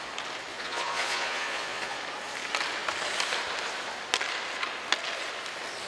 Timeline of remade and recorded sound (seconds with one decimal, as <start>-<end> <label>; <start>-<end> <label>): 0.0-0.5 recorded; 0.5-2.0 remade; 2.0-5.9 recorded